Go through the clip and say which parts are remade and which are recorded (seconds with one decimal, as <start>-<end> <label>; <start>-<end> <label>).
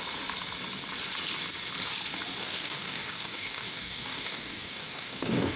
0.0-2.4 recorded; 2.4-5.6 remade